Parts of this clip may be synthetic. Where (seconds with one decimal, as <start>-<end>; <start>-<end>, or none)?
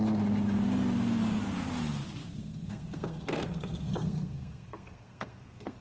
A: 2.2-5.8